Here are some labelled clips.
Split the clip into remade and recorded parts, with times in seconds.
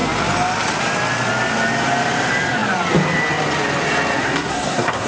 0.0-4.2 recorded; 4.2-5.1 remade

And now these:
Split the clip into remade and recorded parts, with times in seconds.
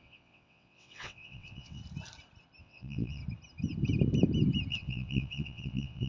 0.0-1.8 remade; 1.8-2.6 recorded; 2.6-3.2 remade; 3.2-4.7 recorded; 4.7-6.1 remade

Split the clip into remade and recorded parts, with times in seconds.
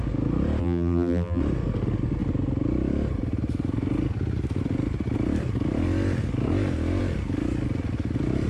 0.0-0.6 recorded; 0.6-1.4 remade; 1.4-8.5 recorded